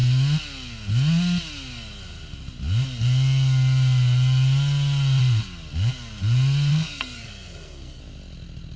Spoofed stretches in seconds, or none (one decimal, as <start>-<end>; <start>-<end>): 6.7-8.0